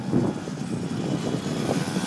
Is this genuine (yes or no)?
yes